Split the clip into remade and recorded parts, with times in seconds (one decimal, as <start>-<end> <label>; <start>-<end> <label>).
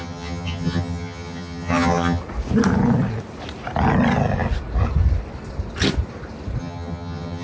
0.0-2.2 remade; 2.2-6.6 recorded; 6.6-7.4 remade